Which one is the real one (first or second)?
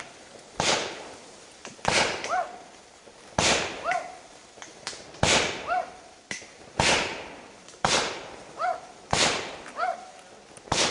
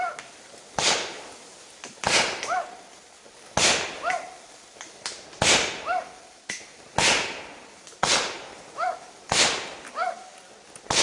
second